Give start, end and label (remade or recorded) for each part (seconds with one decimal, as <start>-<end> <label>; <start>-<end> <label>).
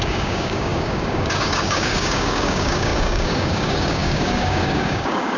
0.0-5.4 remade